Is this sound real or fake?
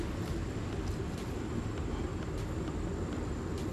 real